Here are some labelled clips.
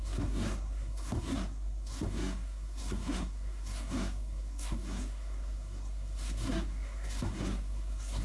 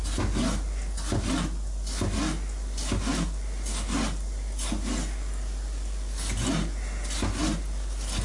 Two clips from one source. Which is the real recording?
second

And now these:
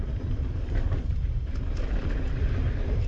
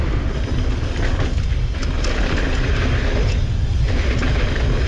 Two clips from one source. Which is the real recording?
second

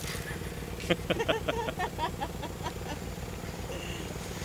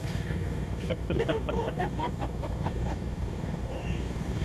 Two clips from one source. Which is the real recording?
first